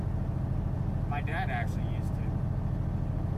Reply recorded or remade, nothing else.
recorded